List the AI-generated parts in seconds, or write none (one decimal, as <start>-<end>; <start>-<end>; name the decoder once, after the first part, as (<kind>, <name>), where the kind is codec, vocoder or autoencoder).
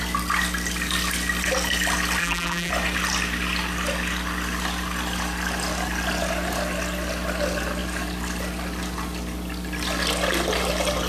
2.2-2.7 (vocoder, BigVGAN v2)